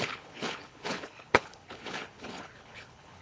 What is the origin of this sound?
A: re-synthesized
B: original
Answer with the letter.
A